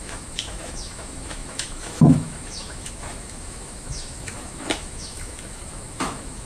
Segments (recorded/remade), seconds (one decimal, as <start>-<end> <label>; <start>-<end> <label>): 0.0-6.5 remade